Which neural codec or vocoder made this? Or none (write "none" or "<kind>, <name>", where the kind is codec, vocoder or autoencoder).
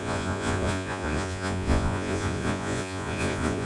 vocoder, Vocos